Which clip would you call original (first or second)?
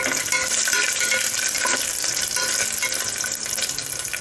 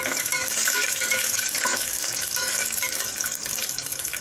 first